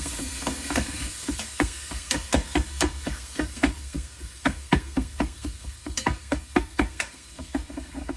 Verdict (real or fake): fake